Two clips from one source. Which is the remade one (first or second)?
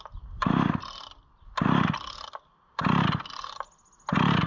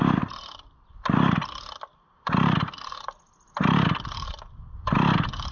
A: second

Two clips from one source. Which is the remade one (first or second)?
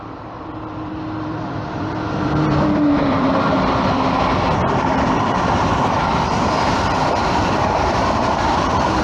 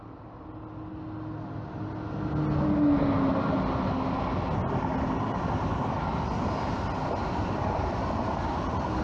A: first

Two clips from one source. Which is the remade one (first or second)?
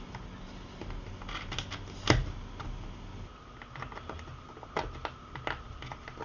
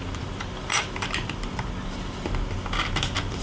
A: second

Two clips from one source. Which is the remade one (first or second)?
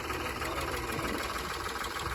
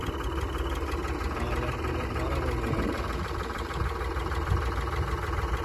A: first